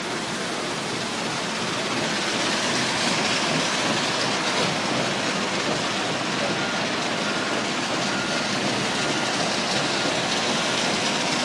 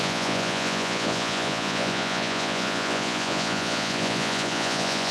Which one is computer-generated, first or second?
second